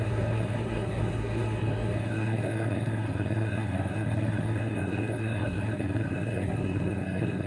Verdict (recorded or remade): remade